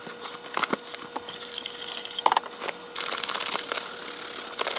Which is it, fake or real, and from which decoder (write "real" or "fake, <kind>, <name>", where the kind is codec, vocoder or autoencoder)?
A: real